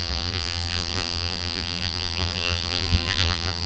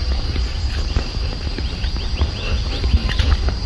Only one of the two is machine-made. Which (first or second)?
first